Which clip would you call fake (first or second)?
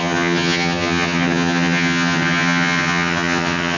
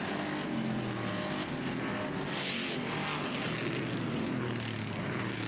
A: first